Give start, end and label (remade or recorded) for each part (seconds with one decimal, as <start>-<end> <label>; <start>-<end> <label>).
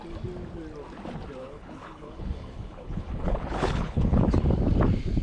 0.0-1.4 recorded; 1.4-4.2 remade; 4.2-5.2 recorded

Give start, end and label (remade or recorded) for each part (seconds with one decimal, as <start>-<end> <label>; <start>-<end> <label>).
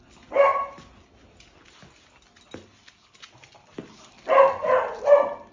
0.0-5.5 recorded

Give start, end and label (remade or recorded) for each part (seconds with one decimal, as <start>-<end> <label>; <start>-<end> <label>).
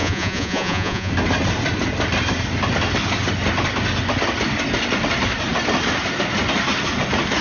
0.0-1.1 remade; 1.1-7.4 recorded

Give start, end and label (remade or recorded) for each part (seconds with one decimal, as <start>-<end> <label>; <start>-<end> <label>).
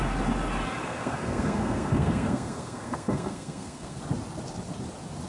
0.0-0.8 recorded; 0.8-4.0 remade; 4.0-5.3 recorded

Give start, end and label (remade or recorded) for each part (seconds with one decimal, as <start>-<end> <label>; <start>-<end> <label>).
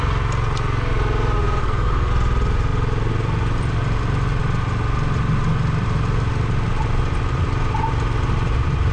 0.0-1.6 recorded; 1.6-2.1 remade; 2.1-8.9 recorded